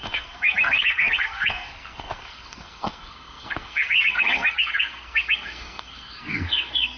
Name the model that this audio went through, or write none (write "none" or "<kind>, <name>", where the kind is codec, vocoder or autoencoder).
codec, SNAC